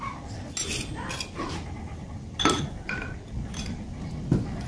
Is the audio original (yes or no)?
yes